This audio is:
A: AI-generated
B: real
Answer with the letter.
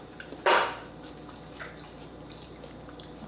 A